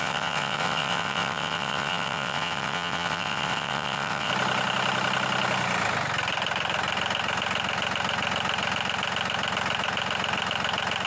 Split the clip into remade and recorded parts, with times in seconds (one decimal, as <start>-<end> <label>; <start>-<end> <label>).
0.0-4.3 remade; 4.3-11.1 recorded